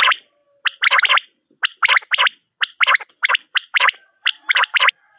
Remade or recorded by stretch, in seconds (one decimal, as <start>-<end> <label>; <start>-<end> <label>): 0.0-0.4 remade; 0.4-3.3 recorded; 3.3-5.2 remade